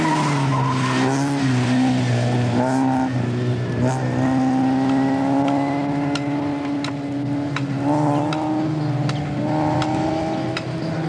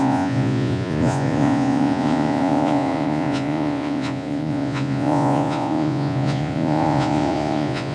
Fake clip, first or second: second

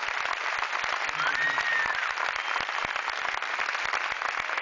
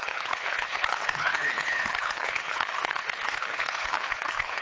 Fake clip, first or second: second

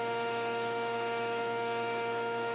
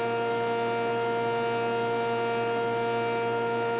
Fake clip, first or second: first